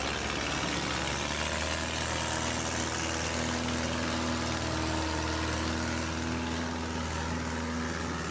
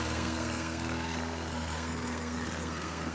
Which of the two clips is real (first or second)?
first